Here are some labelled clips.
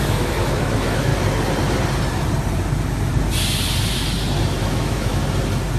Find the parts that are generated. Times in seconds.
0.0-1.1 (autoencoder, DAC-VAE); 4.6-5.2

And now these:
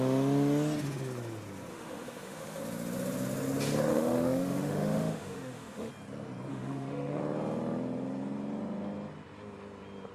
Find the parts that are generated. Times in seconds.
1.7-2.6 (autoencoder, DAC-VAE); 3.9-5.9; 6.5-7.2

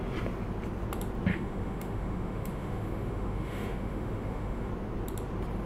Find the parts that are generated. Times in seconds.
1.3-4.7 (autoencoder, DAC-VAE)

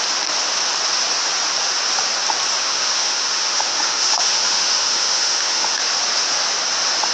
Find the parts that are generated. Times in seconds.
2.6-5.8 (autoencoder, DAC-VAE)

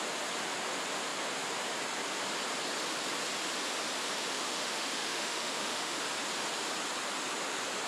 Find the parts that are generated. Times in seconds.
4.3-6.0 (autoencoder, DAC-VAE)